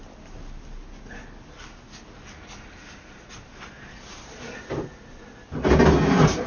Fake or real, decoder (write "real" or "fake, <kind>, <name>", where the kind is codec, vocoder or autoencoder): real